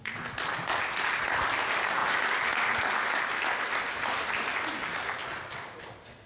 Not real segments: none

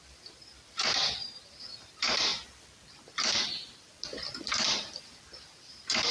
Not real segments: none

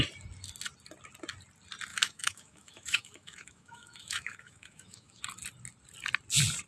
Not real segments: 1.9-5.2 (autoencoder, DAC-VAE)

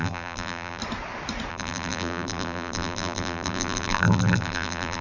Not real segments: 0.0-0.8 (vocoder, BigVGAN v2); 1.5-5.0